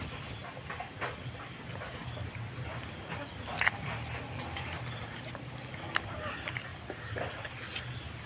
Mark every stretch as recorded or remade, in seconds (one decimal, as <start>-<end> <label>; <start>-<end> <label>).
0.0-2.0 recorded; 2.0-5.0 remade; 5.0-8.3 recorded